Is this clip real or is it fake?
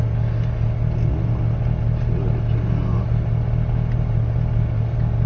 real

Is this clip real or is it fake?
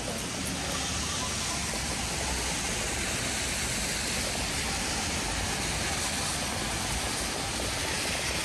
real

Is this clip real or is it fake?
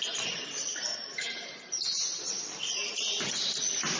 real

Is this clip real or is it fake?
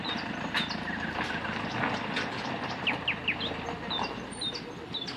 real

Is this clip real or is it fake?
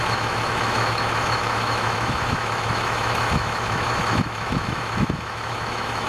fake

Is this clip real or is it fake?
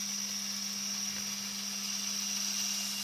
real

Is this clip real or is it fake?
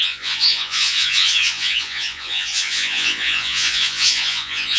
fake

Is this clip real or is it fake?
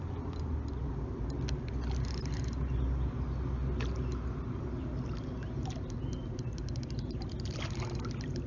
real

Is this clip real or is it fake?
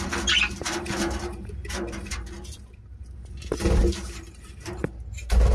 fake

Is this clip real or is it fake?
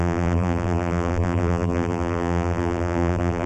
fake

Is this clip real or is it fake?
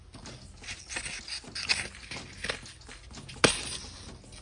real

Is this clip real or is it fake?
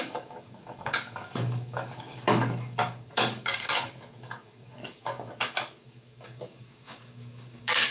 fake